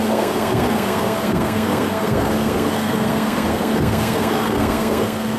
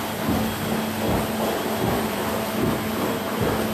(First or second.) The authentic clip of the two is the second